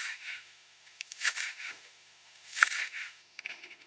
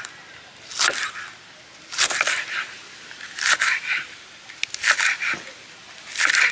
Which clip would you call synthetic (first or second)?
first